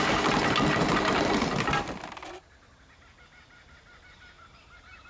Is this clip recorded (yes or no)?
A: yes